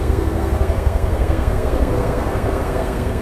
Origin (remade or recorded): remade